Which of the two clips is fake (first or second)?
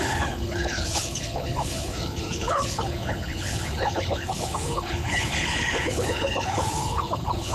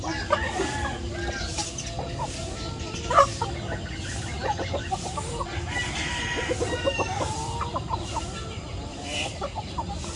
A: first